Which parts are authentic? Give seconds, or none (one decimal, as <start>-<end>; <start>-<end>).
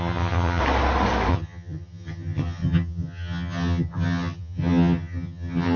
0.6-1.3